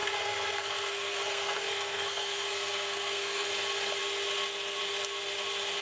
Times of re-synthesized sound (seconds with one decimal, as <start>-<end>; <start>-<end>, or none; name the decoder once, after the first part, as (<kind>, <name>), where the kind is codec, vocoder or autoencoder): 0.0-3.5 (codec, SNAC)